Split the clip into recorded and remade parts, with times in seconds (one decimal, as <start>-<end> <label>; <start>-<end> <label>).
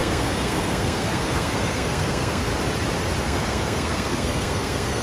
0.0-2.5 remade; 2.5-3.2 recorded; 3.2-5.0 remade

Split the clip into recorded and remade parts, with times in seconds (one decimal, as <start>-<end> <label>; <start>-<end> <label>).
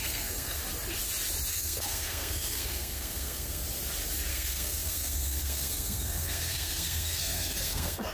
0.0-0.6 remade; 0.6-1.5 recorded; 1.5-3.6 remade; 3.6-4.3 recorded; 4.3-8.1 remade